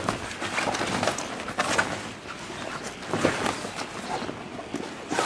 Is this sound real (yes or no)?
yes